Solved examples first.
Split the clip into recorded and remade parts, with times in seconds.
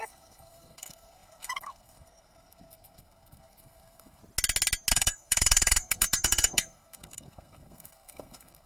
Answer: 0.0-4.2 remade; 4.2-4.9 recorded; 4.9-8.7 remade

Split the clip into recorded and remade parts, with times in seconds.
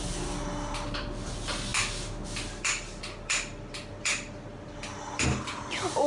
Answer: 0.0-6.1 recorded